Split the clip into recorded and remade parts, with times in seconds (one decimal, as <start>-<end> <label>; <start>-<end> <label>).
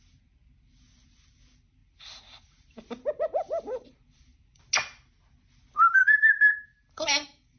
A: 0.0-1.8 recorded; 1.8-4.6 remade; 4.6-6.7 recorded; 6.7-7.6 remade